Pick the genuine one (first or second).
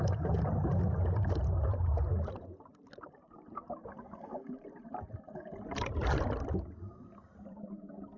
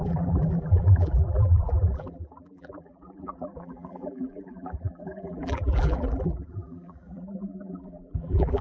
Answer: first